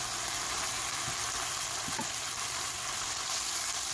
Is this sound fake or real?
real